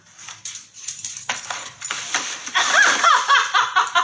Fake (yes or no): yes